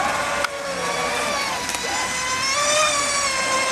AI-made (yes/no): no